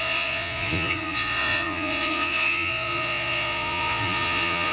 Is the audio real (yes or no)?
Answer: no